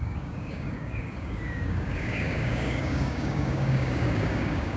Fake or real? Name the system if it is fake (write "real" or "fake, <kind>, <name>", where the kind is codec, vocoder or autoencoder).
fake, codec, DAC